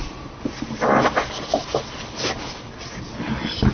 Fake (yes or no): no